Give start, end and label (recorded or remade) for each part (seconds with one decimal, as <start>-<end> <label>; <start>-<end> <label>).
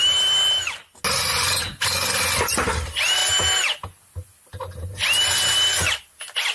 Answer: 0.0-6.5 recorded